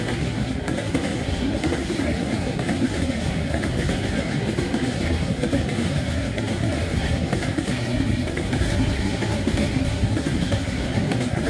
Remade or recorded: remade